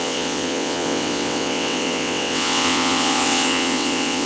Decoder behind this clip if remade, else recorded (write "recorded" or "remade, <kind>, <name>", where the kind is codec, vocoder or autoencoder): remade, vocoder, WaveNeXt